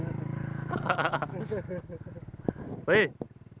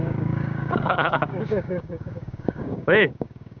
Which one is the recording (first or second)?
first